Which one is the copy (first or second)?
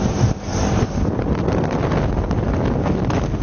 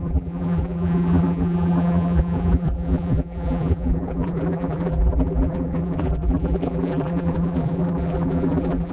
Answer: second